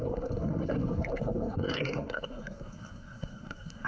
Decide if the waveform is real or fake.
fake